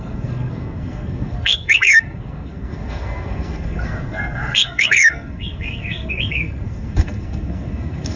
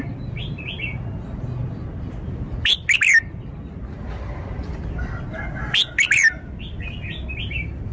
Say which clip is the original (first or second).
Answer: second